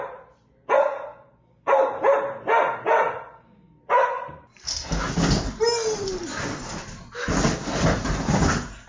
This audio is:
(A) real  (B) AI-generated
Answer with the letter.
A